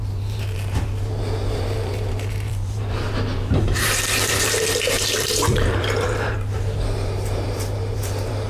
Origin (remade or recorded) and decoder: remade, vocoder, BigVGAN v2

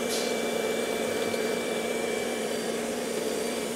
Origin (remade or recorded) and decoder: remade, vocoder, BigVGAN v2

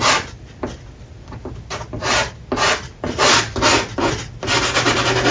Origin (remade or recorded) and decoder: recorded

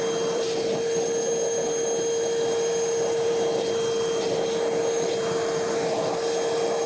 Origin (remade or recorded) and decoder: remade, vocoder, BigVGAN v2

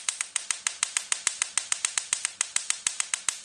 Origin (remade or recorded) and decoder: recorded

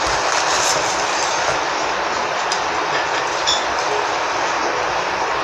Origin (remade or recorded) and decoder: recorded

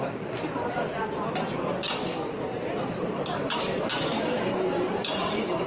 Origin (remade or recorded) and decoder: remade, vocoder, BigVGAN v2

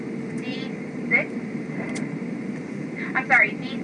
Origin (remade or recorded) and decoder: remade, vocoder, BigVGAN v2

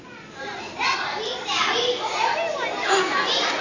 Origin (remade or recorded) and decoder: recorded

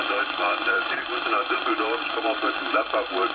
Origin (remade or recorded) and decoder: remade, vocoder, BigVGAN v2